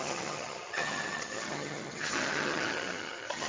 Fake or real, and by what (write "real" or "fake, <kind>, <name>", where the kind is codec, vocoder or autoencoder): fake, vocoder, HiFi-GAN